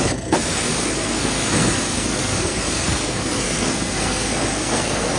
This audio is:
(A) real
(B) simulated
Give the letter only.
B